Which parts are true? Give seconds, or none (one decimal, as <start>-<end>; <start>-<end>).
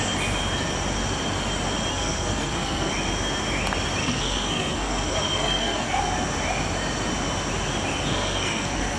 0.0-1.9; 2.9-4.0; 6.0-8.1